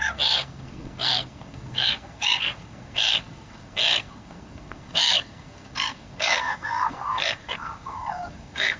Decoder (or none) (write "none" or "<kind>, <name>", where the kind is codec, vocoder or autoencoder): codec, SNAC